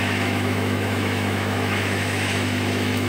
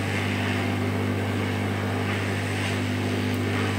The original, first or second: second